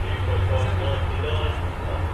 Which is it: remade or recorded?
remade